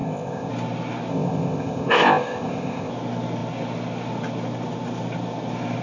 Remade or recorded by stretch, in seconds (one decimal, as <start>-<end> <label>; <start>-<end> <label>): 0.0-0.5 remade; 0.5-1.1 recorded; 1.1-2.9 remade; 2.9-5.8 recorded